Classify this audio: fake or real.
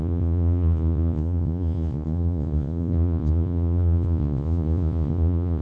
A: fake